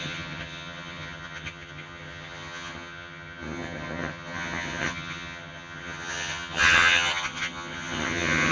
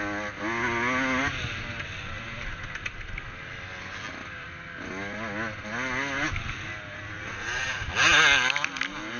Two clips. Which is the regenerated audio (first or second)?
first